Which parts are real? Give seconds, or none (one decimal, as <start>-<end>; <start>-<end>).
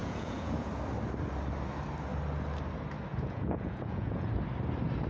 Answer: 0.7-3.1; 4.3-5.1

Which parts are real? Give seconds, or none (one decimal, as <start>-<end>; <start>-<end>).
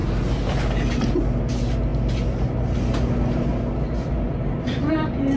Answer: 0.0-5.4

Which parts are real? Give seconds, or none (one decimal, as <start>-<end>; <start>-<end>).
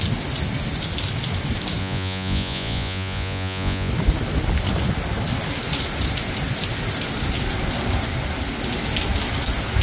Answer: 0.0-1.8; 3.9-9.8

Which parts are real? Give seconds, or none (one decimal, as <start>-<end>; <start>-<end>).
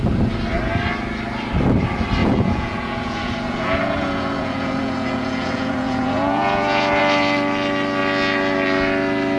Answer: 0.0-2.2; 7.0-9.4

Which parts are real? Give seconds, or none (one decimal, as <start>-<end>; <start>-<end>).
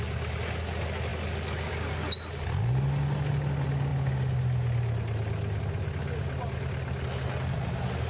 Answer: 0.0-8.1